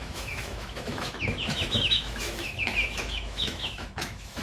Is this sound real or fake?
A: fake